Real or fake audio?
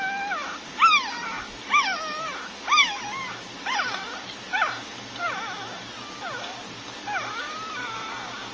real